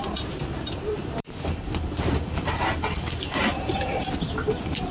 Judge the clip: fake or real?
fake